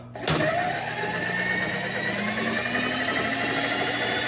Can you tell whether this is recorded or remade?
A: recorded